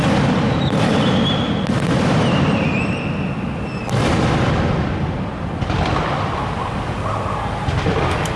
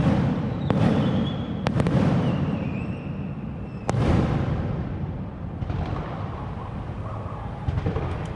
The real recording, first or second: first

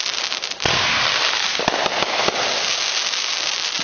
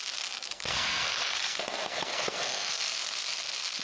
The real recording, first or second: first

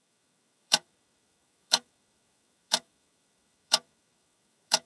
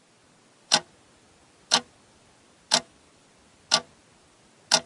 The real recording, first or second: second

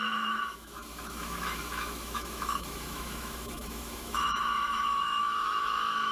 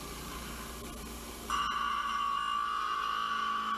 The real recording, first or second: second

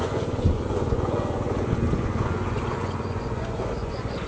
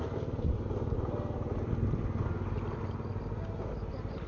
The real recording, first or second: second